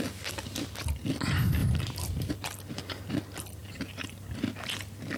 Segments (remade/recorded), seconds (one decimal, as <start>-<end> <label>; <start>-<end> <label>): 0.0-1.6 recorded; 1.6-3.1 remade; 3.1-3.6 recorded; 3.6-4.5 remade; 4.5-5.2 recorded

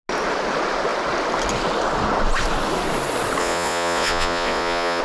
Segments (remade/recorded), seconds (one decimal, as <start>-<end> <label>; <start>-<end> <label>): 0.0-3.4 recorded; 3.4-5.0 remade

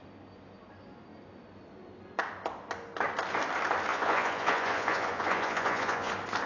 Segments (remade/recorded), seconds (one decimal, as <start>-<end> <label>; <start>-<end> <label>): 0.0-3.9 recorded; 3.9-6.1 remade; 6.1-6.5 recorded

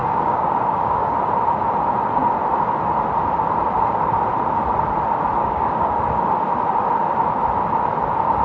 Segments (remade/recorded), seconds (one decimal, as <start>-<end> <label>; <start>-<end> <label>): 0.0-1.2 remade; 1.2-5.4 recorded; 5.4-6.2 remade; 6.2-8.4 recorded